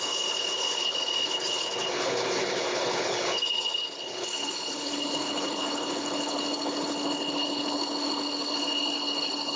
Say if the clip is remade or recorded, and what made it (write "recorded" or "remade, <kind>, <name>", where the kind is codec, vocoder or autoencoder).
remade, codec, HILCodec